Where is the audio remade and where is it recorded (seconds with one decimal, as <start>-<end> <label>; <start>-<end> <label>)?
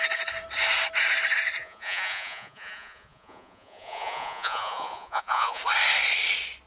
0.0-1.6 recorded; 1.6-5.6 remade; 5.6-6.7 recorded